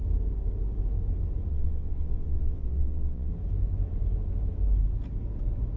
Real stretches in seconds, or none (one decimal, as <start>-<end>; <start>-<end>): 0.0-1.5; 3.3-5.8